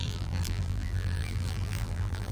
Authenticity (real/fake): fake